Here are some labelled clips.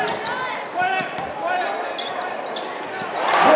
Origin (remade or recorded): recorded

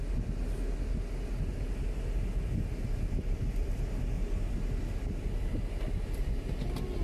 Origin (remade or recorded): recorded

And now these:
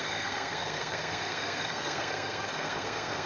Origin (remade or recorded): remade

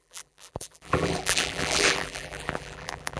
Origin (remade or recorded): remade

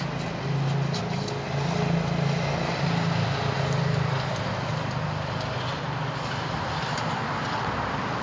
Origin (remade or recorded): recorded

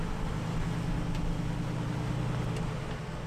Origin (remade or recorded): recorded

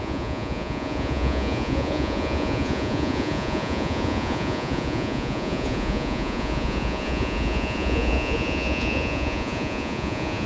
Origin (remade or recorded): remade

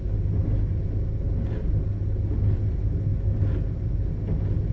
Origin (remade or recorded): recorded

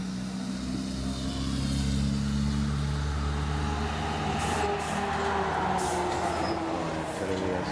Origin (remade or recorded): recorded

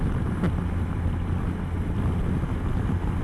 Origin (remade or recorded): recorded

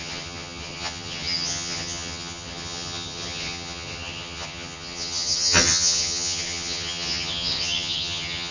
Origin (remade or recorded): remade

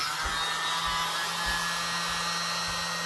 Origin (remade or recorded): recorded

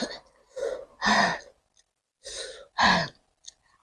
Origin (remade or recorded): recorded